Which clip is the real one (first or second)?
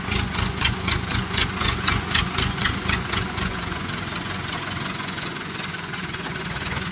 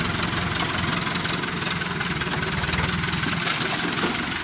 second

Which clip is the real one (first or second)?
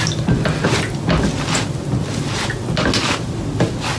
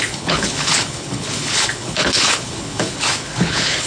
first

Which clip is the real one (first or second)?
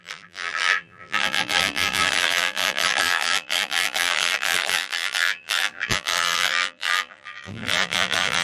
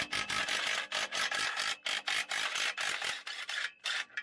second